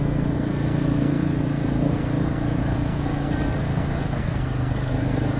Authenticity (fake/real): fake